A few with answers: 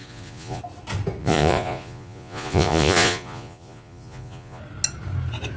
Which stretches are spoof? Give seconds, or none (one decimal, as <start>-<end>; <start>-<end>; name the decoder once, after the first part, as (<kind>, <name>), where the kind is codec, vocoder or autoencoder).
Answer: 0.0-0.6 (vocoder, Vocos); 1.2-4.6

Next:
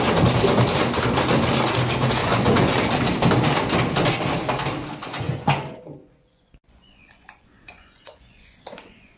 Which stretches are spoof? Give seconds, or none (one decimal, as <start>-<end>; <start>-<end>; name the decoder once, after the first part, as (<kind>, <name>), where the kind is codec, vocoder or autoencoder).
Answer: 2.2-2.7 (vocoder, Vocos); 5.0-9.2

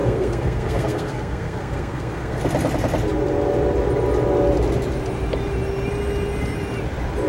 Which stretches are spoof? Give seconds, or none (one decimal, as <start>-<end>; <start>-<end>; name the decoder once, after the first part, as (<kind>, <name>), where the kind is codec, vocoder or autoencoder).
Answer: 0.0-2.4 (codec, SNAC)

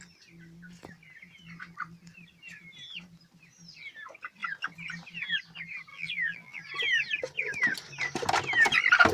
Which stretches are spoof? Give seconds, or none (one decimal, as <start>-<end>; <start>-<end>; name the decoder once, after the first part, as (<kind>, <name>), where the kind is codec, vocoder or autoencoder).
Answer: 5.9-6.6 (vocoder, BigVGAN v2)